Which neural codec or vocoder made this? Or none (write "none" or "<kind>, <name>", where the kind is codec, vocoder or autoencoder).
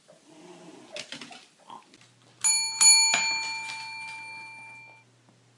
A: none